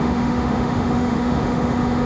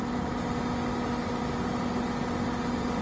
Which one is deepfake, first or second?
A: first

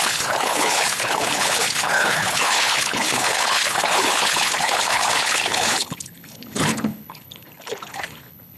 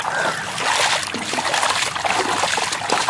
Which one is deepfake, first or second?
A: first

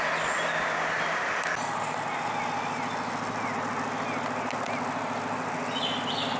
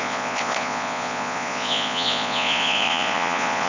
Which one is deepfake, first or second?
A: second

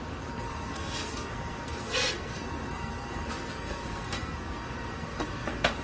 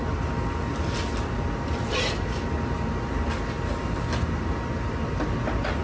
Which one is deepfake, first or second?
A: first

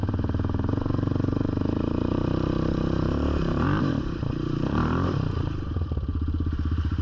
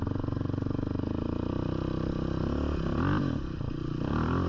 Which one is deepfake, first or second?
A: first